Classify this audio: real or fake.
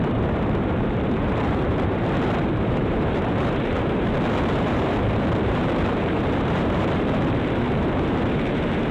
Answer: fake